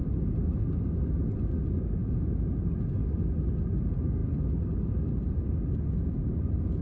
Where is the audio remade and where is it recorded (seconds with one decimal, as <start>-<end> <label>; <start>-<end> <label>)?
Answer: 0.0-6.8 recorded

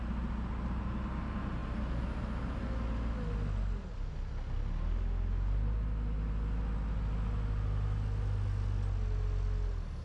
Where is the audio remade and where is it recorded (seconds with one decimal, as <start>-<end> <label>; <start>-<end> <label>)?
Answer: 0.0-10.0 recorded

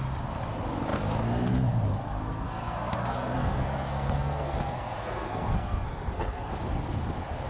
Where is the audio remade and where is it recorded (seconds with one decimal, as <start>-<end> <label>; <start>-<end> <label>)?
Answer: 0.0-2.0 recorded; 2.0-6.5 remade; 6.5-7.5 recorded

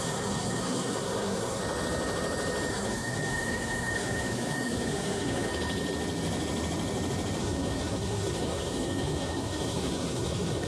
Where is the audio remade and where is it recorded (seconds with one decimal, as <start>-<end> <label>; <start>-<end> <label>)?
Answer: 0.0-1.6 remade; 1.6-2.7 recorded; 2.7-5.5 remade; 5.5-7.4 recorded; 7.4-10.7 remade

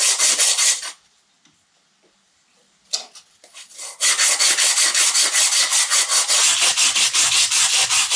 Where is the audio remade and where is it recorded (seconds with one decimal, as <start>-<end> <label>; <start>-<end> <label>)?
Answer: 0.0-8.2 recorded

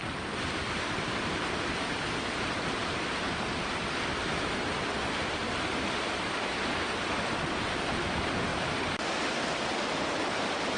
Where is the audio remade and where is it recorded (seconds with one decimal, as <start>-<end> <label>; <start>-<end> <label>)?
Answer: 0.0-10.8 recorded